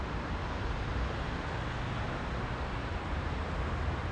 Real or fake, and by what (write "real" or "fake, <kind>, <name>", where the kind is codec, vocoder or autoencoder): real